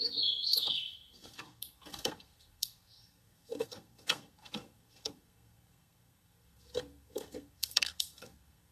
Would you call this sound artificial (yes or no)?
yes